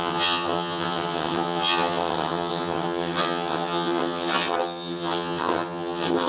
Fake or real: fake